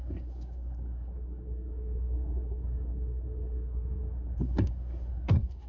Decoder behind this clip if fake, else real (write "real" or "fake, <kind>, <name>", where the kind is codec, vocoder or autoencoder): fake, codec, SNAC